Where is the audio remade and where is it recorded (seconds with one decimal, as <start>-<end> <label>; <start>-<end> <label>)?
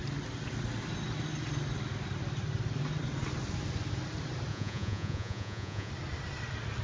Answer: 0.0-4.5 recorded; 4.5-5.9 remade; 5.9-6.8 recorded